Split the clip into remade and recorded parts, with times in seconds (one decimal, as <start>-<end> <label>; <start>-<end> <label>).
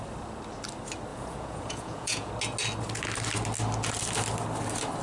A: 0.0-1.1 recorded; 1.1-2.3 remade; 2.3-5.0 recorded